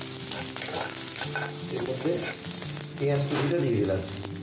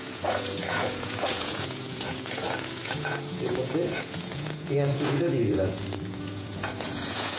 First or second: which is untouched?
first